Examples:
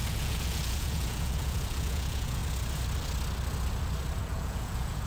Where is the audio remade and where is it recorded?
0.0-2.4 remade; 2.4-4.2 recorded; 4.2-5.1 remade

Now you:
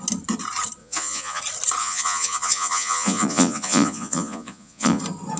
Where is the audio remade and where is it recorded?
0.0-0.8 recorded; 0.8-1.4 remade; 1.4-1.8 recorded; 1.8-5.0 remade; 5.0-5.4 recorded

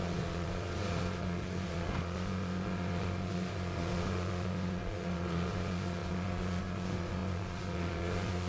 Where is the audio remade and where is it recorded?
0.0-8.5 remade

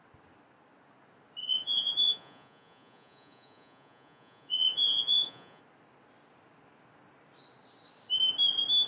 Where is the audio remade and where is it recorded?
0.0-1.4 recorded; 1.4-5.6 remade; 5.6-8.9 recorded